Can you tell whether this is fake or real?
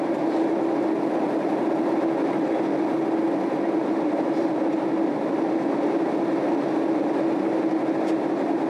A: real